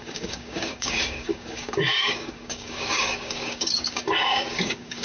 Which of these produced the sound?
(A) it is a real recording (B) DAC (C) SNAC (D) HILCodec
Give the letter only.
B